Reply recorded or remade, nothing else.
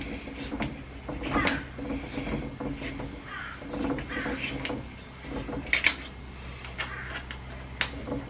recorded